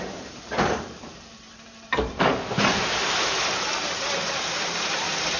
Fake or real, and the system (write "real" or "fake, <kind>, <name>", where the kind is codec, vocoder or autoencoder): fake, vocoder, BigVGAN v2